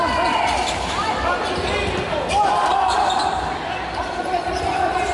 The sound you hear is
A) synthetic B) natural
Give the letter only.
B